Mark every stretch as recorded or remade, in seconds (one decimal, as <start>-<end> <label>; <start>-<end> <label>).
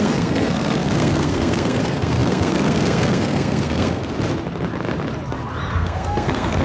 0.0-4.0 remade; 4.0-5.7 recorded; 5.7-6.6 remade